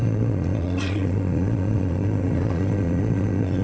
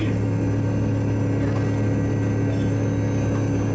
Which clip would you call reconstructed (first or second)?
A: first